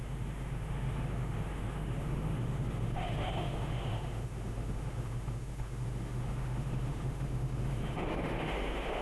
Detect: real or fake fake